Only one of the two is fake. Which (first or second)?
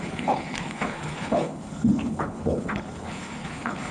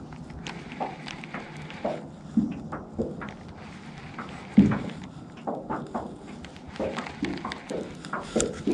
first